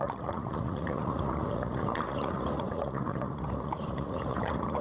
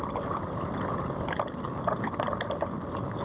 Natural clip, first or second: second